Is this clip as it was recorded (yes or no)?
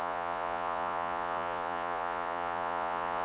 no